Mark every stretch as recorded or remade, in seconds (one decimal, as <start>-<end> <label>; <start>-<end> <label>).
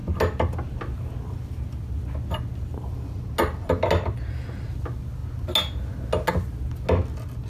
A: 0.0-7.5 recorded